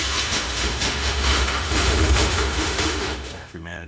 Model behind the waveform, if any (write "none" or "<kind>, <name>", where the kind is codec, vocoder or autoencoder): autoencoder, DAC-VAE